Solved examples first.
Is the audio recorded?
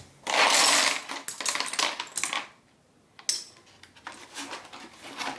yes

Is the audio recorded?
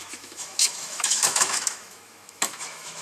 no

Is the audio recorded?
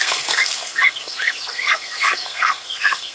no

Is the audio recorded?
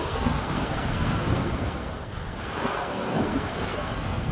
no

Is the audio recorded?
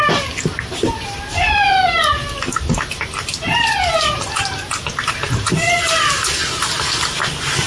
yes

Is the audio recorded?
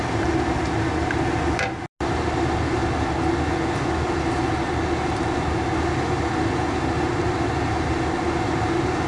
yes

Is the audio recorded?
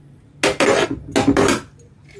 yes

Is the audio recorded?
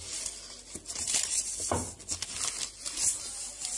yes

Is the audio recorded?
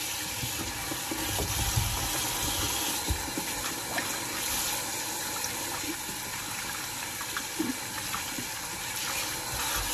yes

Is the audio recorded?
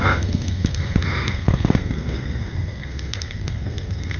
no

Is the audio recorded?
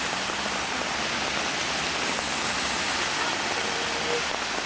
yes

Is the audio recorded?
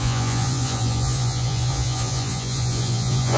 no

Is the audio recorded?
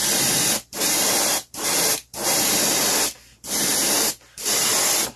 no